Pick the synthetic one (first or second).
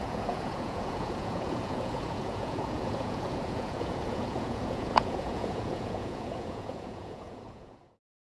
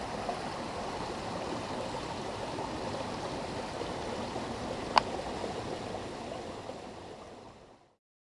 first